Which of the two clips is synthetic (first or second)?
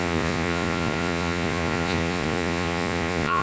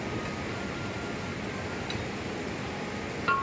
first